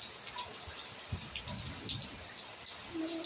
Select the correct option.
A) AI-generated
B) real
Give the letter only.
B